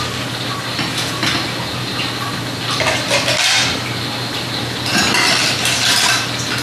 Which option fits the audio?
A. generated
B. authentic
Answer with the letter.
B